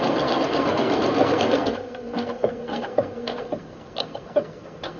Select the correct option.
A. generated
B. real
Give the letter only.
A